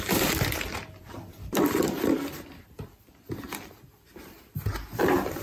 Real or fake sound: fake